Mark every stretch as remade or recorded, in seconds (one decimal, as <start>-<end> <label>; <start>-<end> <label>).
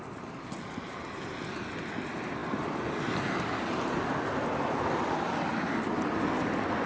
0.0-6.9 recorded